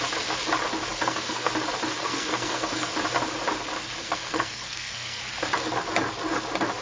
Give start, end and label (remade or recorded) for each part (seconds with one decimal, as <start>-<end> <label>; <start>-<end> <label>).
0.0-0.9 recorded; 0.9-1.5 remade; 1.5-2.0 recorded; 2.0-2.9 remade; 2.9-4.0 recorded; 4.0-5.2 remade; 5.2-6.8 recorded